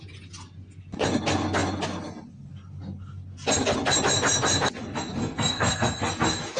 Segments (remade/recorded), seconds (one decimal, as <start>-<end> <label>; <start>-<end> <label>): 0.0-5.2 recorded; 5.2-6.1 remade; 6.1-6.6 recorded